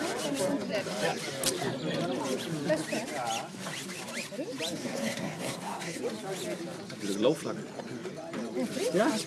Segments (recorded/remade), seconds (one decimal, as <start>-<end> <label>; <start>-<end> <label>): 0.0-4.8 recorded; 4.8-6.0 remade; 6.0-9.3 recorded